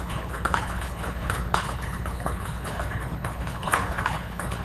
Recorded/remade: remade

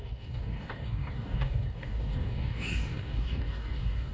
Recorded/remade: remade